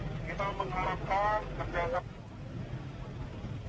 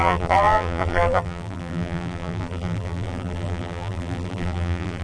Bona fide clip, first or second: first